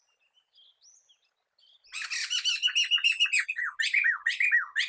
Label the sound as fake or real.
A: real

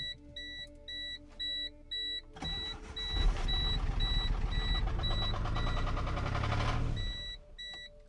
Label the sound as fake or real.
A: real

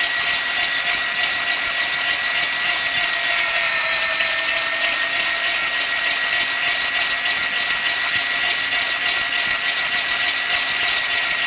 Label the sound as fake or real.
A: real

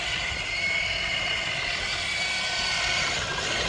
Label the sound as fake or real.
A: real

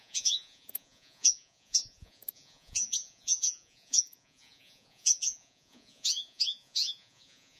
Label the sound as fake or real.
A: fake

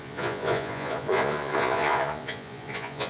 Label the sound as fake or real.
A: fake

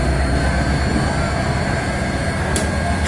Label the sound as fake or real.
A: real